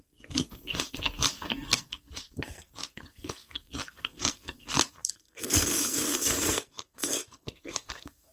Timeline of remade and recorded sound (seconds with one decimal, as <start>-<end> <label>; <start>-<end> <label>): 0.0-8.3 remade